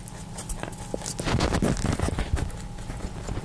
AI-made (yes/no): no